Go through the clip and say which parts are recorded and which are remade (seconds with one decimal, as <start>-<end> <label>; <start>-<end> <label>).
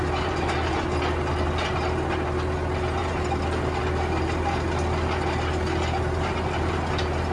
0.0-7.3 recorded